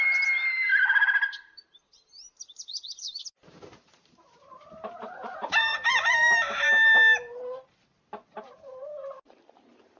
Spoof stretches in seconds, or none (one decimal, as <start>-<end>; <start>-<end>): 0.0-5.9; 9.3-10.0